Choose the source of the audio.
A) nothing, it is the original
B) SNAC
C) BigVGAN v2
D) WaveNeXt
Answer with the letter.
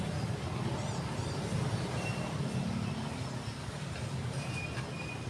A